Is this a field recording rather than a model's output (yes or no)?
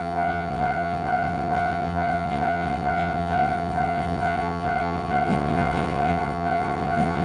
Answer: no